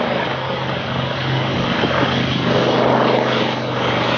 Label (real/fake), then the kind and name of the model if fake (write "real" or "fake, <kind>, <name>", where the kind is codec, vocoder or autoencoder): fake, codec, DAC